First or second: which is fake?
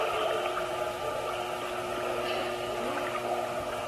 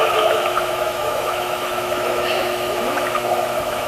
second